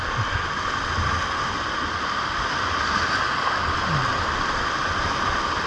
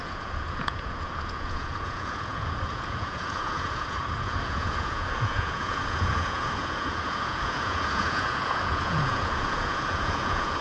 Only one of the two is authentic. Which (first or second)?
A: first